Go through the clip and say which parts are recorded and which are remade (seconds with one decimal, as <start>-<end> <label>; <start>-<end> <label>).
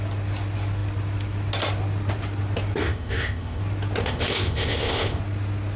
0.0-2.8 recorded; 2.8-3.6 remade; 3.6-4.0 recorded; 4.0-5.2 remade; 5.2-5.8 recorded